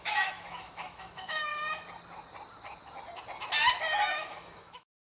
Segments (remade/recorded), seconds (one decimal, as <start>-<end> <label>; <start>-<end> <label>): 0.0-1.5 remade; 1.5-3.8 recorded; 3.8-5.1 remade